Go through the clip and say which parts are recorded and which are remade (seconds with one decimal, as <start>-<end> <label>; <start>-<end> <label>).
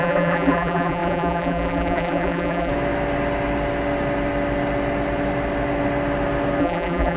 0.0-2.7 remade; 2.7-6.6 recorded; 6.6-7.2 remade